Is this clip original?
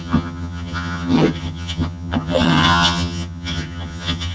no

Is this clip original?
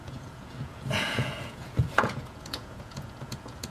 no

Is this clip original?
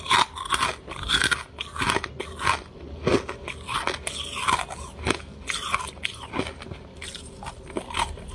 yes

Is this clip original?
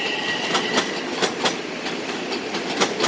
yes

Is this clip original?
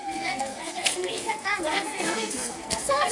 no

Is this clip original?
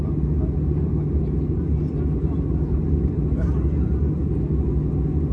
yes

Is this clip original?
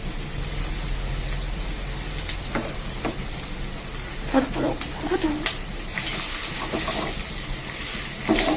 yes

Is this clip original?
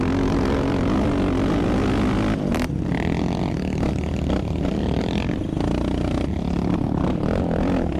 yes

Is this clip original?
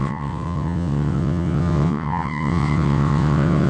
no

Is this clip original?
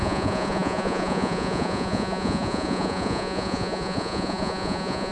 no